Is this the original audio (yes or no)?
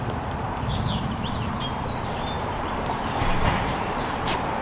no